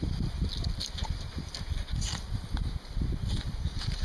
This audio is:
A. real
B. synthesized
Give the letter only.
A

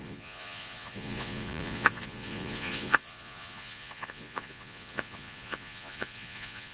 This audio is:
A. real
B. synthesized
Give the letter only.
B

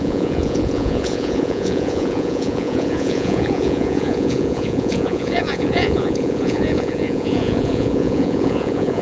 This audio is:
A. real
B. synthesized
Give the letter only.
B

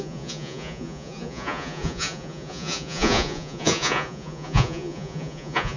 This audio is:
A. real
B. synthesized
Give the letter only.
B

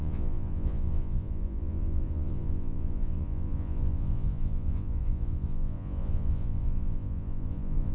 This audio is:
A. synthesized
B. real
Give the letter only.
A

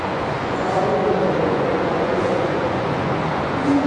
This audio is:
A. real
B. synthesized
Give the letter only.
B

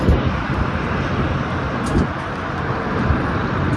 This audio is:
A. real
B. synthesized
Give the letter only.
A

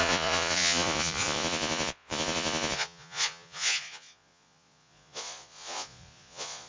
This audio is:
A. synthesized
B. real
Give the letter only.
A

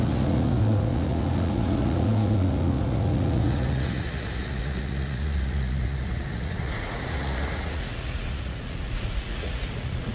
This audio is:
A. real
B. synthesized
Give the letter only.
B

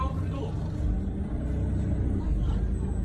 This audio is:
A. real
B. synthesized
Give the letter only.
A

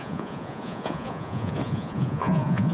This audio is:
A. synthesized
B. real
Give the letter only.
A